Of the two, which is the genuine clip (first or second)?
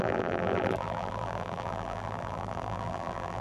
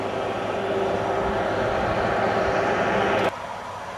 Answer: second